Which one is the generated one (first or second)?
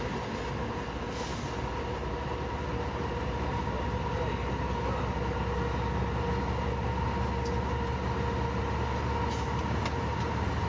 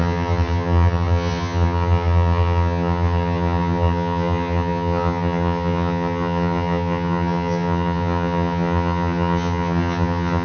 second